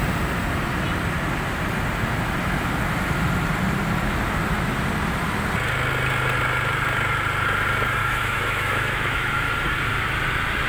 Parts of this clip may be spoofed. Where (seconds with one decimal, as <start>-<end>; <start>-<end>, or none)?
8.0-9.5